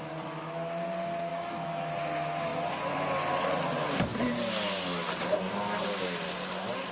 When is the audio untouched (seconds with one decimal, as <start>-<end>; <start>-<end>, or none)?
0.0-1.3; 1.9-6.9